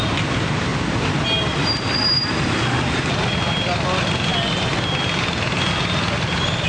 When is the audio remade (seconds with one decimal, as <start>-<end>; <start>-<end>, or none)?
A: none